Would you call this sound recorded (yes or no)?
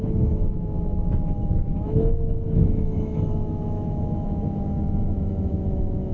no